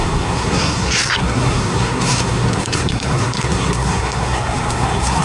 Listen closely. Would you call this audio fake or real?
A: fake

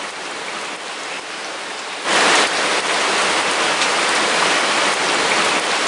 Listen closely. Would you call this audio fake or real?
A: real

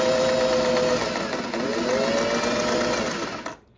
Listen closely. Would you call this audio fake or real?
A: real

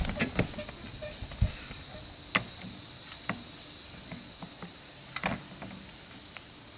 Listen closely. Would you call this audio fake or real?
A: real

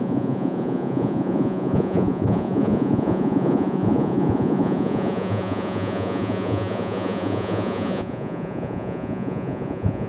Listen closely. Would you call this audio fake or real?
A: fake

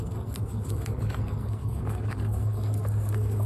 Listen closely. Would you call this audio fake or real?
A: fake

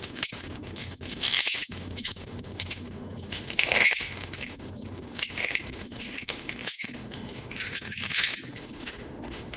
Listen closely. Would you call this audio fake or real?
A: fake